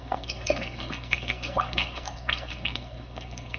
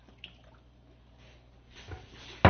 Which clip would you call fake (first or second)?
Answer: first